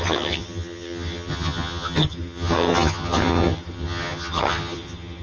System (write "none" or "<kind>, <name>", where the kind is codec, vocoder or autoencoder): vocoder, HiFi-GAN